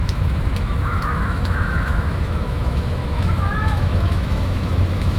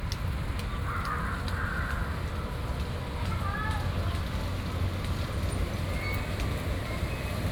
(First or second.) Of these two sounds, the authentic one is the second